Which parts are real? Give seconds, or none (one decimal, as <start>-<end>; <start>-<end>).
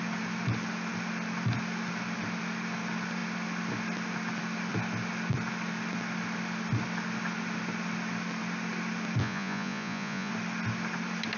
0.0-9.2; 10.3-11.4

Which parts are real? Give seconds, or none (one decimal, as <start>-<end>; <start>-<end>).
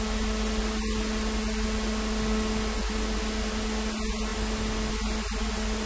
0.0-5.9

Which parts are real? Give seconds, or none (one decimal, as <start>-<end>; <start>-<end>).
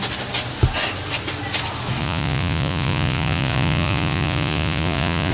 0.0-2.0